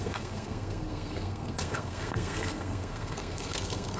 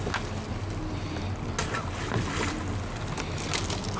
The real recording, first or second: second